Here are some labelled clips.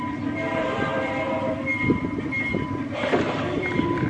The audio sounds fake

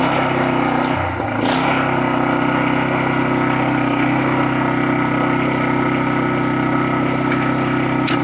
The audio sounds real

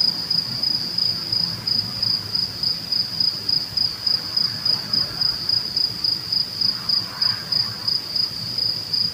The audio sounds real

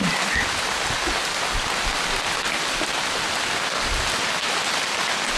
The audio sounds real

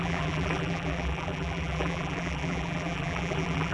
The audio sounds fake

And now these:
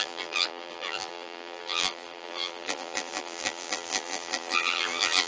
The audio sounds fake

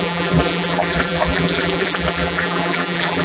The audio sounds fake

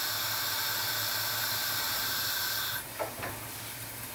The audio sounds fake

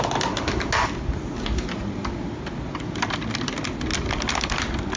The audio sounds real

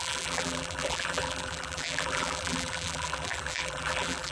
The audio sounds fake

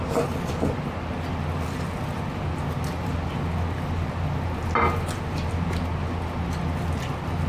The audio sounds real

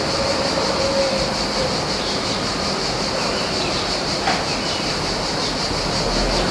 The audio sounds real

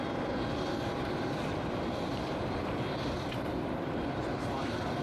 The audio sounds fake